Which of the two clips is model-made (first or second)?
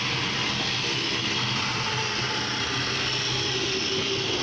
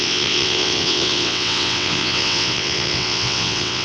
second